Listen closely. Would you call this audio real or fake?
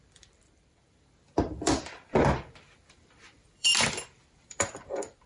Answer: fake